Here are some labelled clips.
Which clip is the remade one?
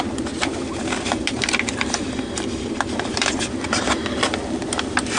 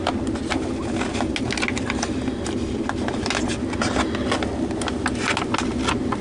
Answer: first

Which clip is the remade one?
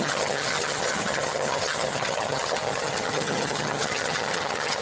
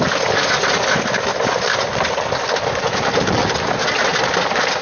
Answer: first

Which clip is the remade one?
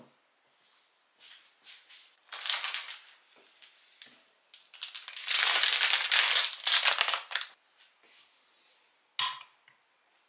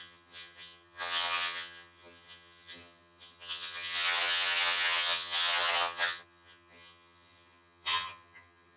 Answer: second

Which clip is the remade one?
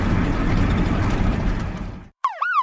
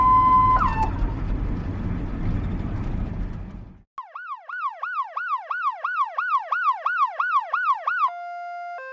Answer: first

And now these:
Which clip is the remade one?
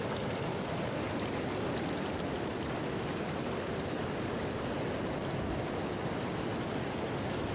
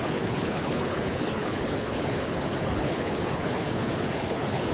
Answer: second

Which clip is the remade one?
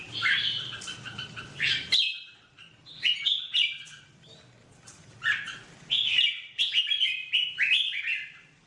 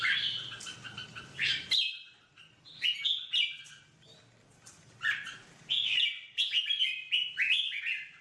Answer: first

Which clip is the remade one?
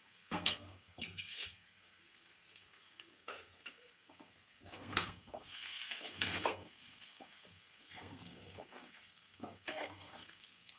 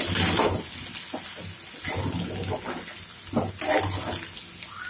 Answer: first